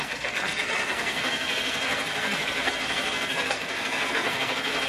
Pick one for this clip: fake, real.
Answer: fake